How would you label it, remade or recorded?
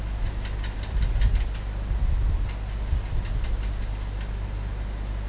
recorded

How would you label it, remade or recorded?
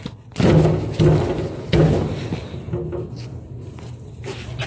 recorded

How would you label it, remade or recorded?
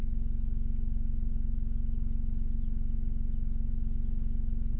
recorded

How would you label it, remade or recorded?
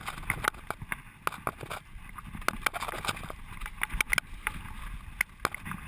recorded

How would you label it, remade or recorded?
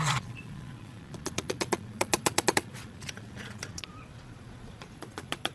remade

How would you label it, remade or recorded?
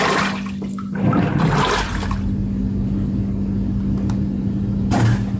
recorded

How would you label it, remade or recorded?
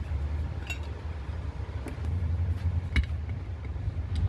recorded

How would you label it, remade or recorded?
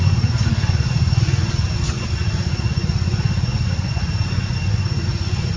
remade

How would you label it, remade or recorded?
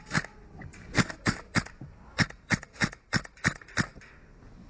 recorded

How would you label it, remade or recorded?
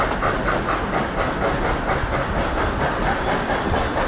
recorded